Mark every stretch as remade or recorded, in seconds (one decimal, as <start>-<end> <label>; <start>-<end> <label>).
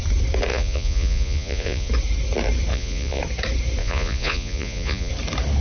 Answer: 0.0-0.5 recorded; 0.5-1.9 remade; 1.9-2.7 recorded; 2.7-3.2 remade; 3.2-3.8 recorded; 3.8-5.1 remade; 5.1-5.6 recorded